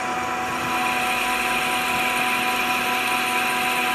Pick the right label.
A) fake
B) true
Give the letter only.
B